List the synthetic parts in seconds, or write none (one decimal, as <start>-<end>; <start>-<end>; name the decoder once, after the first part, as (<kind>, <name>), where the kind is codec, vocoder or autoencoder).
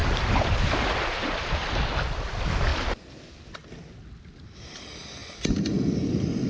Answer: 0.0-1.8 (vocoder, BigVGAN v2)